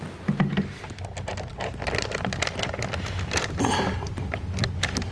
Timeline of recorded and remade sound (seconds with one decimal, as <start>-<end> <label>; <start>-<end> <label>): 0.0-5.1 recorded